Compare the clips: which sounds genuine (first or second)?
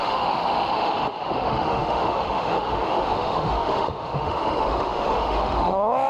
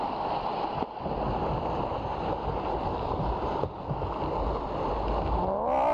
second